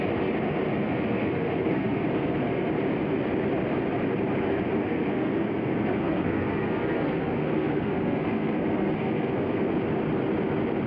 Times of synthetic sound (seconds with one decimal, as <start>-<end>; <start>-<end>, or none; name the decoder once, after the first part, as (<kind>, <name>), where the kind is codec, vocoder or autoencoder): 0.8-2.7 (codec, SNAC); 4.8-9.7